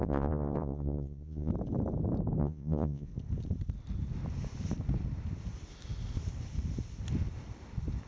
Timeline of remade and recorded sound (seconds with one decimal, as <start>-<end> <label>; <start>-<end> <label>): 0.0-1.5 remade; 1.5-2.4 recorded; 2.4-3.1 remade; 3.1-8.1 recorded